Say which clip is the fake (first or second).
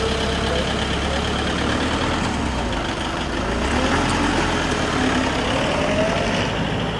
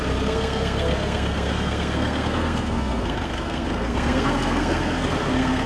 second